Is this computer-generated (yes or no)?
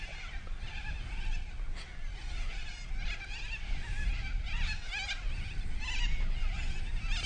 no